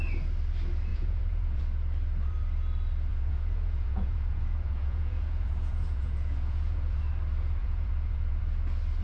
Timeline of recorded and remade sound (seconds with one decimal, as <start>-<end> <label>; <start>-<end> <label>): 0.0-0.9 recorded; 0.9-1.6 remade; 1.6-3.1 recorded; 3.1-7.0 remade; 7.0-7.6 recorded; 7.6-8.4 remade; 8.4-9.0 recorded